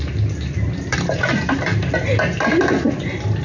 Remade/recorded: recorded